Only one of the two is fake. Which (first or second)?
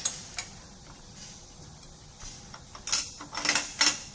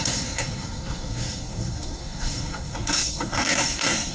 second